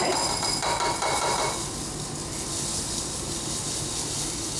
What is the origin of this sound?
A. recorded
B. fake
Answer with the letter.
A